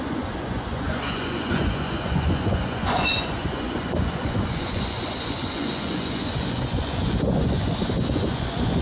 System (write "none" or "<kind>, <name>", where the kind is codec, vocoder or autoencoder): vocoder, Vocos